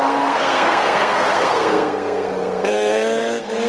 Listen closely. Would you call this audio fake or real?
fake